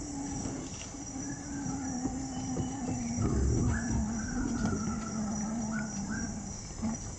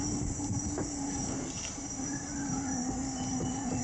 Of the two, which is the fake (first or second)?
first